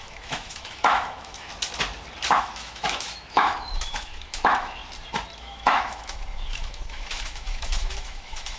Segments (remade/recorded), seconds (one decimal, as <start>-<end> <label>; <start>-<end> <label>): 0.0-1.5 remade; 1.5-2.3 recorded; 2.3-4.8 remade; 4.8-5.4 recorded; 5.4-8.6 remade